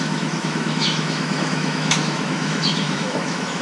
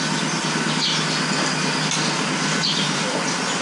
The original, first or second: second